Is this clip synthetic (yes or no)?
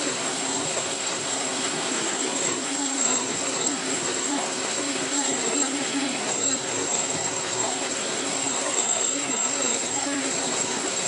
yes